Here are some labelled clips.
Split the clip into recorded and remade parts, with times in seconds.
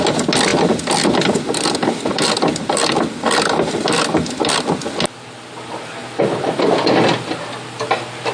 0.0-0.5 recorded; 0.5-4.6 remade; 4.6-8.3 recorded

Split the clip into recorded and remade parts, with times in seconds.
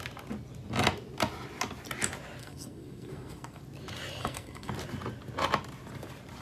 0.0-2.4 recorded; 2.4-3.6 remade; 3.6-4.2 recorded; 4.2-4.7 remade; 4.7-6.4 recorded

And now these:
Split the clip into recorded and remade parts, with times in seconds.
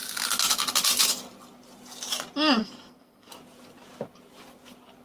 0.0-2.6 recorded; 2.6-3.3 remade; 3.3-5.0 recorded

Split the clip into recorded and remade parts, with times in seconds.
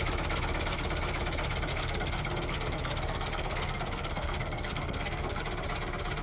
0.0-1.7 recorded; 1.7-5.4 remade; 5.4-6.2 recorded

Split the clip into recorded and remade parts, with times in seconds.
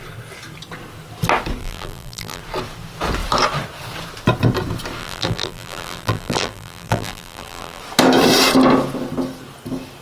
0.0-1.6 recorded; 1.6-2.4 remade; 2.4-5.0 recorded; 5.0-7.8 remade; 7.8-10.0 recorded